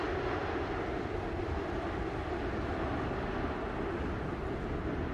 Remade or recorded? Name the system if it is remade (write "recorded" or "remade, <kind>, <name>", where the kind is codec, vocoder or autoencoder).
recorded